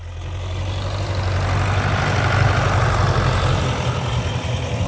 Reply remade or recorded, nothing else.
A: recorded